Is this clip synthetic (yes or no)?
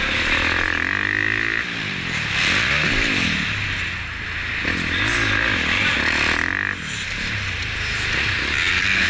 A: no